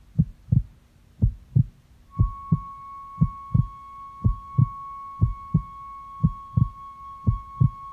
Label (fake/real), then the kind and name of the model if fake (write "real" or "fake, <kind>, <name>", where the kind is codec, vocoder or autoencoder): real